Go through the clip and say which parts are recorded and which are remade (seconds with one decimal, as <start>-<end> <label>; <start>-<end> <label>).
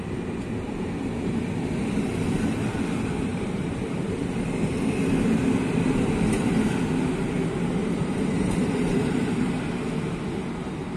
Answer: 0.0-3.3 recorded; 3.3-4.3 remade; 4.3-7.8 recorded; 7.8-9.3 remade; 9.3-11.0 recorded